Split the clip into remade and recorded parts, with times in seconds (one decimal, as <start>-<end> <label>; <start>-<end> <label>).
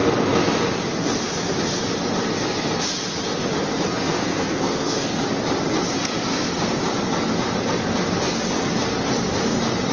0.0-4.1 recorded; 4.1-5.2 remade; 5.2-6.3 recorded; 6.3-6.8 remade; 6.8-9.9 recorded